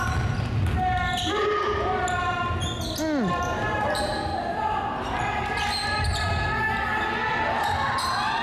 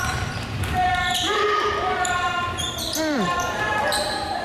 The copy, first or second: second